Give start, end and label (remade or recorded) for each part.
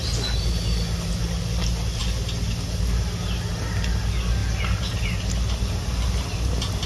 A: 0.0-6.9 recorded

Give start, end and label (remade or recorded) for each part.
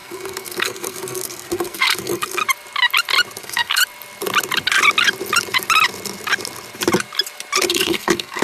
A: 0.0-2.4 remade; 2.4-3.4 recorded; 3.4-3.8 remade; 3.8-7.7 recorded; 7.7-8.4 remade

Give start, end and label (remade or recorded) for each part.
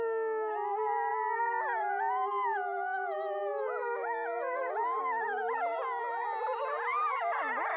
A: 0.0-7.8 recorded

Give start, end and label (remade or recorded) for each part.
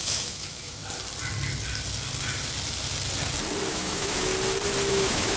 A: 0.0-0.8 remade; 0.8-3.7 recorded; 3.7-4.3 remade; 4.3-4.9 recorded; 4.9-5.4 remade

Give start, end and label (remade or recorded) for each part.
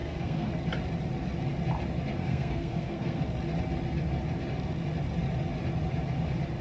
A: 0.0-0.5 remade; 0.5-2.2 recorded; 2.2-3.2 remade; 3.2-6.6 recorded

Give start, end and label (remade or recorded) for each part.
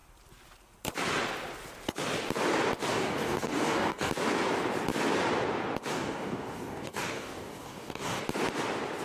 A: 0.0-2.9 recorded; 2.9-4.1 remade; 4.1-5.9 recorded; 5.9-8.2 remade; 8.2-9.0 recorded